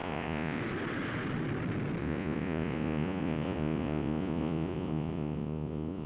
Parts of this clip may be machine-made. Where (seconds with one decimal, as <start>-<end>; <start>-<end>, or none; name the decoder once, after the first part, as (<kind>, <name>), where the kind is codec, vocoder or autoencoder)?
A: 0.0-0.6 (vocoder, Vocos); 2.0-6.1